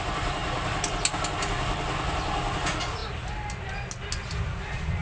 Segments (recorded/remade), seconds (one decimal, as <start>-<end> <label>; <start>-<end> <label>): 0.0-5.0 recorded